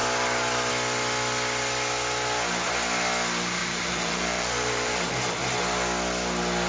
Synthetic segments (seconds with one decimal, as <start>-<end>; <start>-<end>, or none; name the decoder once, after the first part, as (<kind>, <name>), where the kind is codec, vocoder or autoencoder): 3.6-5.1 (vocoder, BigVGAN v2)